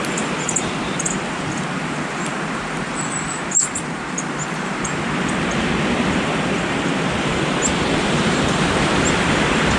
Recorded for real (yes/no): no